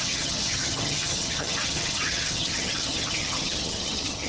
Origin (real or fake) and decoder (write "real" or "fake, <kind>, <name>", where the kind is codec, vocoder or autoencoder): fake, vocoder, HiFi-GAN